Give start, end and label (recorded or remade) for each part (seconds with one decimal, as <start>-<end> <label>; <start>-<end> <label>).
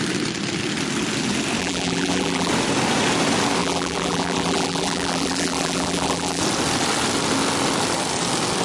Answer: 0.0-1.6 recorded; 1.6-2.5 remade; 2.5-3.6 recorded; 3.6-6.4 remade; 6.4-8.6 recorded